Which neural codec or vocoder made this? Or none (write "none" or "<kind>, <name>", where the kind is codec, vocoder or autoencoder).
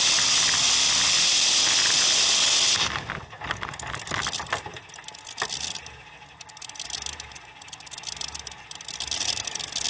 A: none